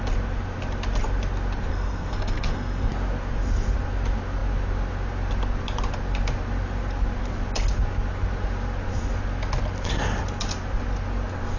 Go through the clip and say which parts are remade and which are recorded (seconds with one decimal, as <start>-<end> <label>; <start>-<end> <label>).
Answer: 0.0-1.7 recorded; 1.7-2.9 remade; 2.9-11.6 recorded